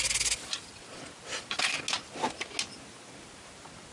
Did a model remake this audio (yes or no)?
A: no